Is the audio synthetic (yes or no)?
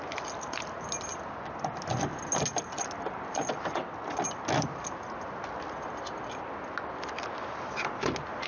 no